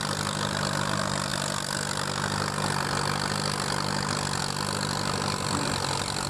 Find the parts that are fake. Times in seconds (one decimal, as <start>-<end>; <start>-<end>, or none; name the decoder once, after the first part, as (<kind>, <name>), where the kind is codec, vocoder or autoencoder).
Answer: none